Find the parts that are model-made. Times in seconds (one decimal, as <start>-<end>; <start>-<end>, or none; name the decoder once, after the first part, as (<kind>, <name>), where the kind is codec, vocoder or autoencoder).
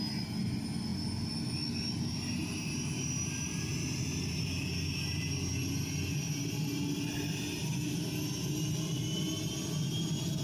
2.4-4.5 (vocoder, BigVGAN v2); 7.6-8.2